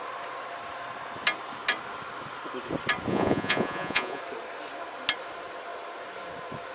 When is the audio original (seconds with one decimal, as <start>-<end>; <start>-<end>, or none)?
0.0-3.1; 4.2-6.7